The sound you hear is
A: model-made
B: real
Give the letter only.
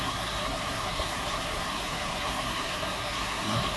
A